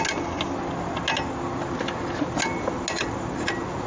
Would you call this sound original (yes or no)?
yes